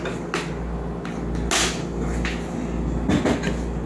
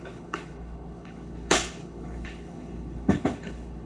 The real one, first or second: first